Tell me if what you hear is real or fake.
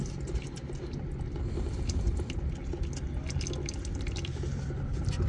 real